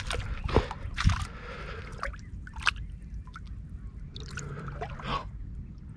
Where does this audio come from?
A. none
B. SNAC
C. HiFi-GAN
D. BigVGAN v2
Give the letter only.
A